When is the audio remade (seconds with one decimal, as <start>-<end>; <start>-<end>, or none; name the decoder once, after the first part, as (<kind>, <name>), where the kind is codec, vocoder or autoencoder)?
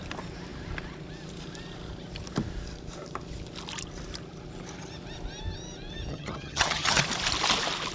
6.1-7.0 (vocoder, HiFi-GAN)